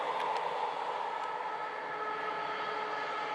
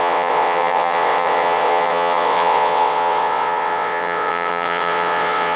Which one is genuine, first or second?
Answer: first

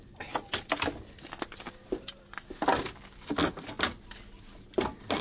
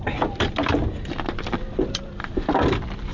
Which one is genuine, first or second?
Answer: first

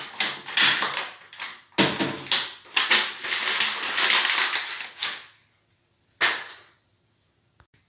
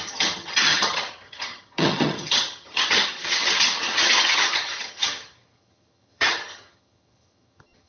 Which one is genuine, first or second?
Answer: first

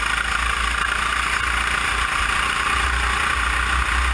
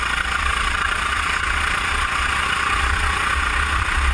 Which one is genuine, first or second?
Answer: first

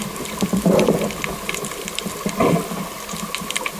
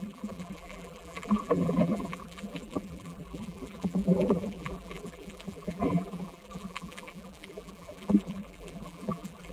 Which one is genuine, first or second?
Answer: first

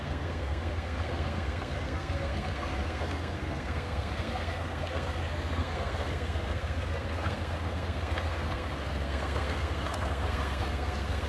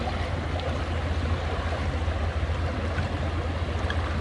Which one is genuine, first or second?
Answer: second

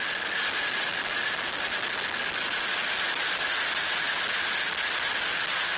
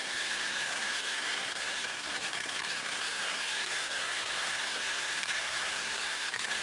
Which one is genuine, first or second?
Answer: first